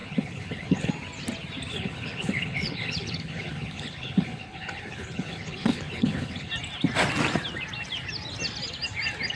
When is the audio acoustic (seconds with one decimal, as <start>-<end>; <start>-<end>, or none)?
0.9-1.7; 6.5-9.4